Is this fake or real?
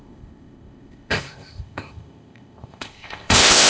fake